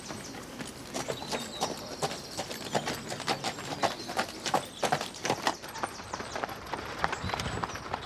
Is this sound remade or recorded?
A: recorded